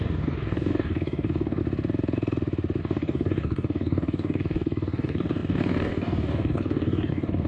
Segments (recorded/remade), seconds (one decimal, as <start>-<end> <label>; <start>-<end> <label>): 0.0-1.6 remade; 1.6-2.8 recorded; 2.8-7.5 remade